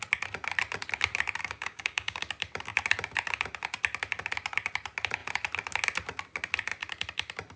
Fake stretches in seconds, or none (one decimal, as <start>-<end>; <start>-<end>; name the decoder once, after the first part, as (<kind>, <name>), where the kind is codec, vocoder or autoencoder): 1.4-2.2 (codec, DAC)